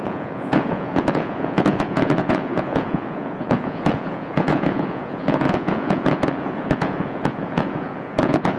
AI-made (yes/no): yes